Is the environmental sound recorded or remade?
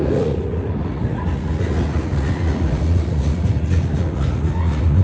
remade